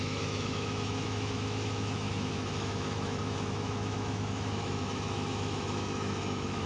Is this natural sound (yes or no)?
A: no